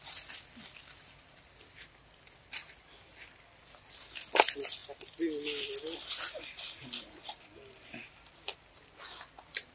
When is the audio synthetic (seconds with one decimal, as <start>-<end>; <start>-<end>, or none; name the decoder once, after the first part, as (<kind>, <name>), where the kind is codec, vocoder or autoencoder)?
none